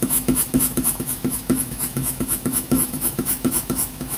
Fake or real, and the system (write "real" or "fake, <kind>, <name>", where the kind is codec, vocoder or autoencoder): fake, autoencoder, DAC-VAE